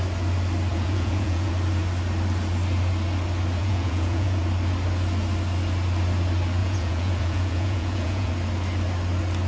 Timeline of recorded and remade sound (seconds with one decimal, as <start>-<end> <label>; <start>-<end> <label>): 0.0-0.7 recorded; 0.7-1.5 remade; 1.5-3.6 recorded; 3.6-4.4 remade; 4.4-6.6 recorded; 6.6-8.3 remade; 8.3-9.5 recorded